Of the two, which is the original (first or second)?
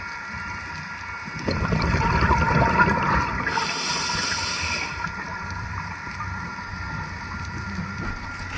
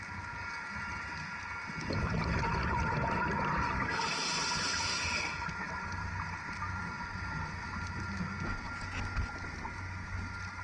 second